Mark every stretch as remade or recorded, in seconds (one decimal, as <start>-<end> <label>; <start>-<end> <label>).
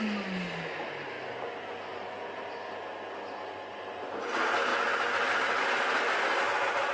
0.0-1.9 recorded; 1.9-2.9 remade; 2.9-3.7 recorded; 3.7-4.3 remade; 4.3-6.9 recorded